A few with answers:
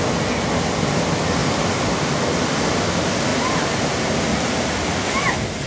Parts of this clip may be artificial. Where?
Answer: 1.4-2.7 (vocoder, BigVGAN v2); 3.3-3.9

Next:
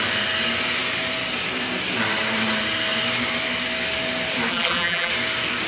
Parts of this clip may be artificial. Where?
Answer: 4.5-5.1 (vocoder, BigVGAN v2)

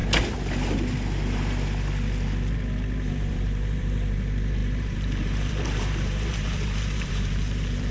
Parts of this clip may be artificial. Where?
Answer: 3.1-7.9 (vocoder, BigVGAN v2)

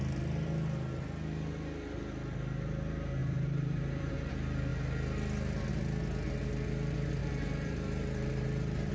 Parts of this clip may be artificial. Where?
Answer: 3.2-4.3 (vocoder, BigVGAN v2); 7.2-8.9

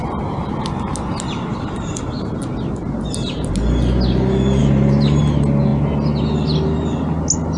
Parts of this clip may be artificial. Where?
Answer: 1.5-2.3 (vocoder, BigVGAN v2); 4.6-5.2

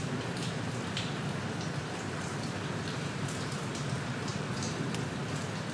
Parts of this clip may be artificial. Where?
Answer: 2.3-3.7 (vocoder, BigVGAN v2); 4.3-4.8

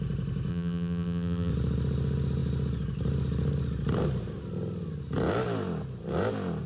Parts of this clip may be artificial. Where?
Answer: 0.5-1.5 (vocoder, BigVGAN v2)